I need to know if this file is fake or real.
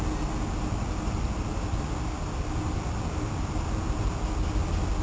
real